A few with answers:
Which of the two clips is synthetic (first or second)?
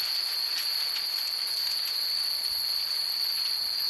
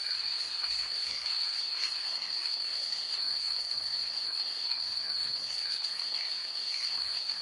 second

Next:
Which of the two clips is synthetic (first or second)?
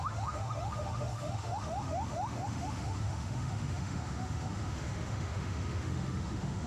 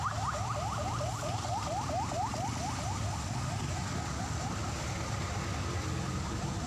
first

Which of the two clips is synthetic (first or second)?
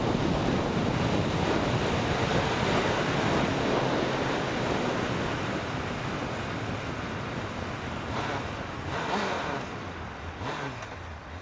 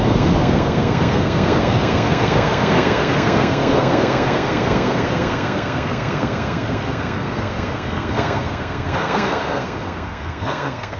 second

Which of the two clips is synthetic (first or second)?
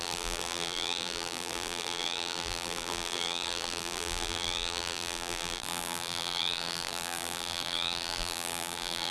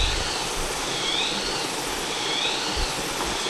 first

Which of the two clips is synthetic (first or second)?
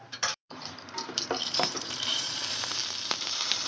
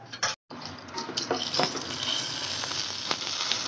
first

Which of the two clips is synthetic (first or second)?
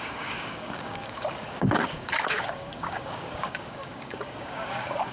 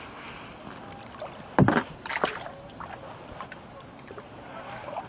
first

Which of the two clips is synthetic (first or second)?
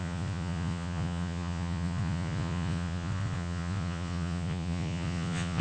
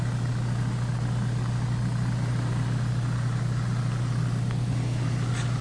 first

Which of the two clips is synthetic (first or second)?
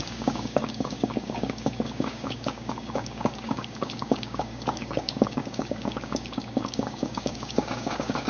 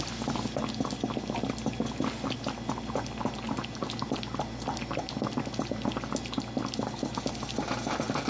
first